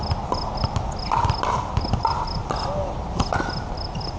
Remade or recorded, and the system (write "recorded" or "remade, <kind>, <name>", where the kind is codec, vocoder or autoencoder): recorded